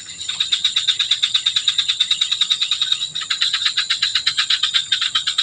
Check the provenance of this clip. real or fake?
fake